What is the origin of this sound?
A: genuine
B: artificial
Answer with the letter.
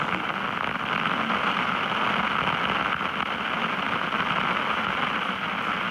A